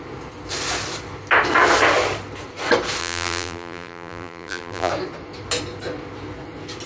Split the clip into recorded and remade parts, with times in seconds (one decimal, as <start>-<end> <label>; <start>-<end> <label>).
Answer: 0.0-3.0 recorded; 3.0-4.9 remade; 4.9-6.9 recorded